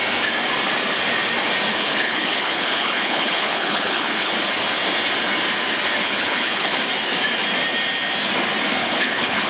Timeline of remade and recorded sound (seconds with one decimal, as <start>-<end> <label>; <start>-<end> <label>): 0.0-1.7 recorded; 1.7-4.3 remade; 4.3-6.0 recorded; 6.0-6.8 remade; 6.8-8.8 recorded; 8.8-9.5 remade